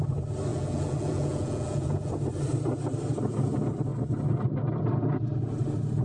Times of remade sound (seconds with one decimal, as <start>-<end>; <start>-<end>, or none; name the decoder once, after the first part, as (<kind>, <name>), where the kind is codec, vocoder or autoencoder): 0.5-2.1 (vocoder, Vocos)